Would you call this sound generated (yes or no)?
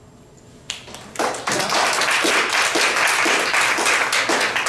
no